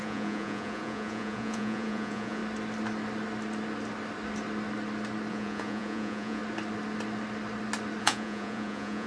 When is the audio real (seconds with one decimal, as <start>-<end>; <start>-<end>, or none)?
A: 2.4-5.3; 6.4-8.0

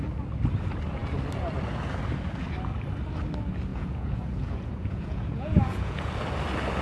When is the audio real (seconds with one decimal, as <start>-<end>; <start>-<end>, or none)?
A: 0.0-3.7; 6.1-6.8

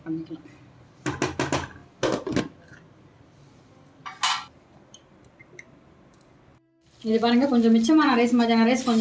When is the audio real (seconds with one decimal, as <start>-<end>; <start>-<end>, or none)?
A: 0.0-9.0

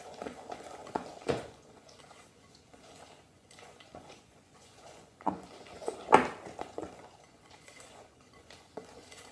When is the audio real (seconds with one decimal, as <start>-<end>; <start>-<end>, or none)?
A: 6.0-6.6

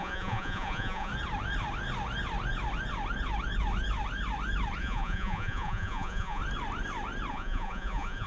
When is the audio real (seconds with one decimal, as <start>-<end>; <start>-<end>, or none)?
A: 1.1-4.8; 6.4-7.3